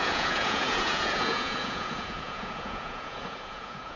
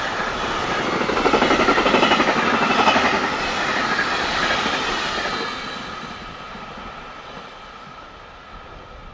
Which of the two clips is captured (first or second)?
second